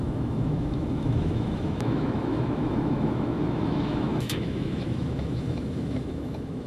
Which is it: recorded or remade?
remade